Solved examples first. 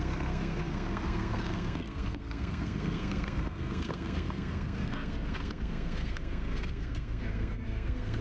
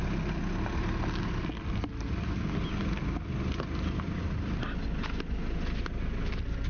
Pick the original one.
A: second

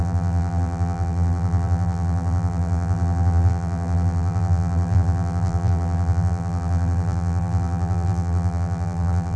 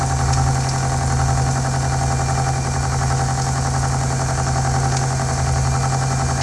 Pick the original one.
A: second